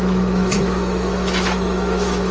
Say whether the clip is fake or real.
fake